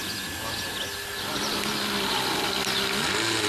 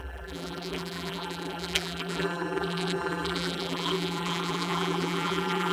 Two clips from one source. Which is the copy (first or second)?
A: second